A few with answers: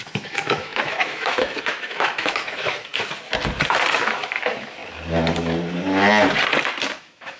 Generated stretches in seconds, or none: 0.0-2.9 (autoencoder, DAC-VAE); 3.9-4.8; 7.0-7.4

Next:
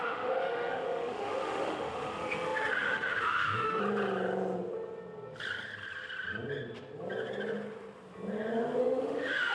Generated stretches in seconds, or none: 0.0-3.8 (autoencoder, DAC-VAE); 8.8-9.5

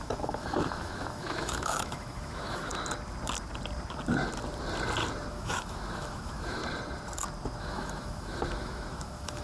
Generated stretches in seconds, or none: 0.0-2.7 (autoencoder, DAC-VAE); 5.3-6.6; 7.6-9.4